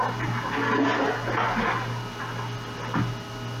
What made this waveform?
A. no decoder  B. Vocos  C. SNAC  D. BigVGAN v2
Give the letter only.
A